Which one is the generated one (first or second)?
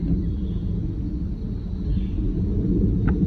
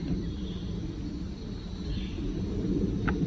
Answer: second